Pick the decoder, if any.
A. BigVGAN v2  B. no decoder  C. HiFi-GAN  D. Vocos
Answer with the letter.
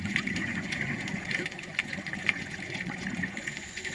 D